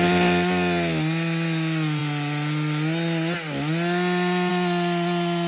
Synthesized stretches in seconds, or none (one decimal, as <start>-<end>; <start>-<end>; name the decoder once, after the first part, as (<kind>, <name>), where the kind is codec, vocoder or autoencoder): none